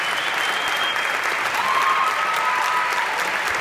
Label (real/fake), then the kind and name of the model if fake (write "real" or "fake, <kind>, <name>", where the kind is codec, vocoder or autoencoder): real